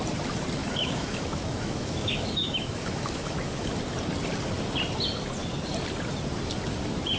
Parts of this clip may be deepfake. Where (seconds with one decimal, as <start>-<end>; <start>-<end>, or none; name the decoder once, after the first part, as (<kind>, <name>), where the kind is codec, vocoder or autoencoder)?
0.6-3.7 (autoencoder, DAC-VAE)